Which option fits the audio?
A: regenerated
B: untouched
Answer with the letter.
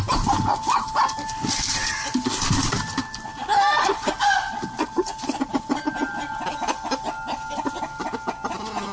B